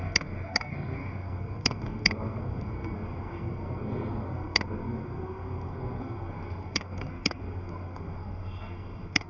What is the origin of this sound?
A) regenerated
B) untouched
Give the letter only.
A